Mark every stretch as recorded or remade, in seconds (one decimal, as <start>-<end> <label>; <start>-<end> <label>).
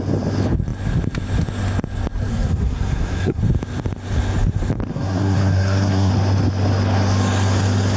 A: 0.0-2.3 recorded; 2.3-3.4 remade; 3.4-4.9 recorded; 4.9-6.1 remade; 6.1-8.0 recorded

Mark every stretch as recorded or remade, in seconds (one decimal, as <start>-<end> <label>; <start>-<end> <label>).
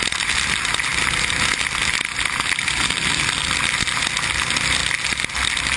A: 0.0-5.8 recorded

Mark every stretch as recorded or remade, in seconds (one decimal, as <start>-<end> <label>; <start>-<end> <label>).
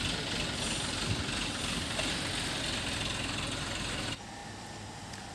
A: 0.0-5.3 recorded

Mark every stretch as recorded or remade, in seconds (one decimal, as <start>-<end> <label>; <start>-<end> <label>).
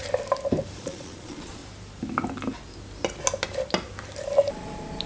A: 0.0-0.8 recorded; 0.8-1.6 remade; 1.6-5.1 recorded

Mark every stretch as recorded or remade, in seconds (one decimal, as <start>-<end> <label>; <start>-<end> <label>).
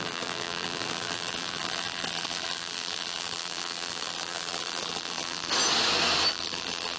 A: 0.0-5.5 remade; 5.5-6.3 recorded; 6.3-7.0 remade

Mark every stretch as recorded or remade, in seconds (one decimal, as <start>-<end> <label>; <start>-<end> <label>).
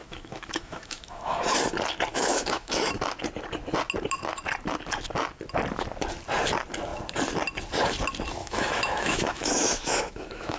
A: 0.0-1.4 remade; 1.4-2.1 recorded; 2.1-2.9 remade; 2.9-8.4 recorded; 8.4-10.6 remade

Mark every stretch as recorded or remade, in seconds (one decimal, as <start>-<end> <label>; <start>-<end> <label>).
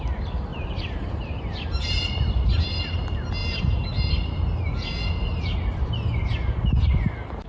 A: 0.0-0.5 recorded; 0.5-1.4 remade; 1.4-3.4 recorded; 3.4-4.1 remade; 4.1-5.2 recorded; 5.2-5.9 remade; 5.9-7.5 recorded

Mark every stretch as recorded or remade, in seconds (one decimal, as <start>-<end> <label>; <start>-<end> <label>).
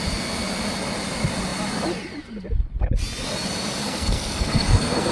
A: 0.0-3.8 recorded; 3.8-5.1 remade